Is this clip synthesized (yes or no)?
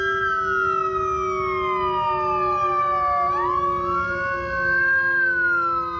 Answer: no